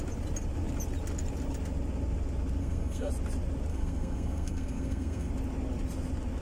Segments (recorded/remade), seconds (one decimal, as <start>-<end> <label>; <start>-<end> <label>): 0.0-2.6 recorded; 2.6-3.1 remade; 3.1-3.7 recorded; 3.7-5.3 remade; 5.3-6.4 recorded